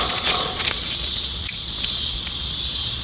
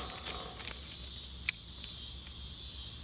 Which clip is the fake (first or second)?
first